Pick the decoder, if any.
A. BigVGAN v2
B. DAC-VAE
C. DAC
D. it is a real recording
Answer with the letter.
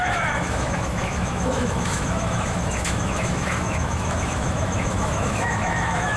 B